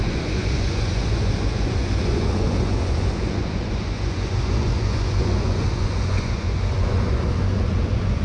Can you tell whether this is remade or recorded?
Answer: remade